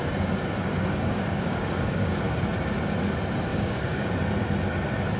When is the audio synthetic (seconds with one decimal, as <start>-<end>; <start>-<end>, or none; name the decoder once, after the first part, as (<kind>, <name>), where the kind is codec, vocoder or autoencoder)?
0.7-2.2 (codec, DAC); 3.5-4.1